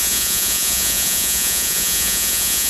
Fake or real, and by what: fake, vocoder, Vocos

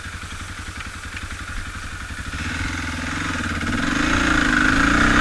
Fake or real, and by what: real